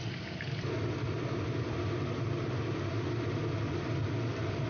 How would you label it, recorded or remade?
recorded